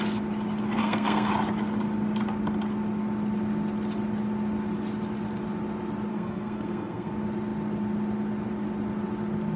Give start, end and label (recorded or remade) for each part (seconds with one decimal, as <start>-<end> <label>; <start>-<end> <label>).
0.0-0.8 recorded; 0.8-1.3 remade; 1.3-6.1 recorded; 6.1-7.1 remade; 7.1-9.6 recorded